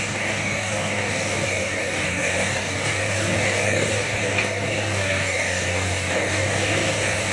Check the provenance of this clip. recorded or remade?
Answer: remade